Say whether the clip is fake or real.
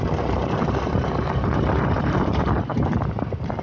fake